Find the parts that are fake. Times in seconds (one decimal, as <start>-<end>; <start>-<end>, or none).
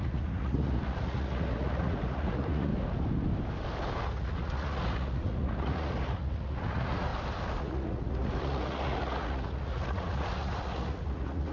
0.0-2.7; 4.1-7.1; 7.6-11.5